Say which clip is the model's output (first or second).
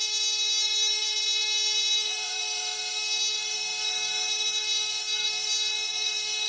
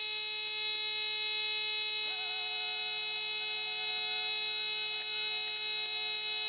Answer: first